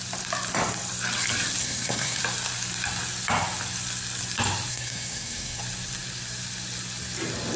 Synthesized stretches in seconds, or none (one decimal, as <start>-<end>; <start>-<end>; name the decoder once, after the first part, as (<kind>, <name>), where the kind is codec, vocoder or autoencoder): 1.6-2.2 (codec, SNAC); 4.7-5.6